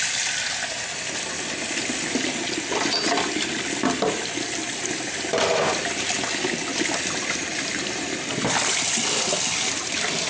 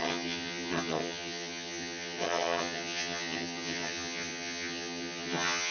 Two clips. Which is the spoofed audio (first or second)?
second